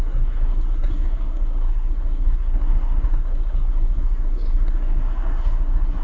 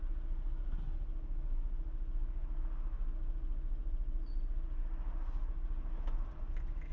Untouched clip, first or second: second